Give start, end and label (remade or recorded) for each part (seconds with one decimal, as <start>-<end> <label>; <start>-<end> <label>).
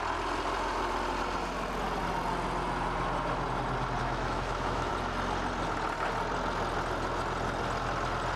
0.0-4.0 recorded; 4.0-4.9 remade; 4.9-8.4 recorded